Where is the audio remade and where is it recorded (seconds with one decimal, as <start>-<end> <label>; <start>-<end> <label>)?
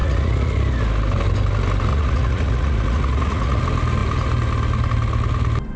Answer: 0.0-0.6 remade; 0.6-1.9 recorded; 1.9-3.6 remade; 3.6-5.8 recorded